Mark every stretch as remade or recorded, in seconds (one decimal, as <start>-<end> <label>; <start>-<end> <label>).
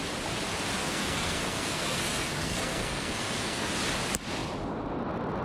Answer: 0.0-0.8 recorded; 0.8-3.7 remade; 3.7-5.4 recorded